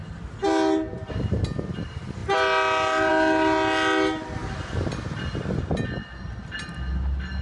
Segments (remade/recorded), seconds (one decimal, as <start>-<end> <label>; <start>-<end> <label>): 0.0-7.4 recorded